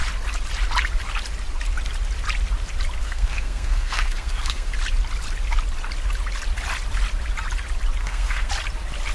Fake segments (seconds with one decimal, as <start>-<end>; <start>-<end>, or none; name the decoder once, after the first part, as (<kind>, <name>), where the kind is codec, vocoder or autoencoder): 3.0-4.7 (codec, SNAC); 8.0-8.5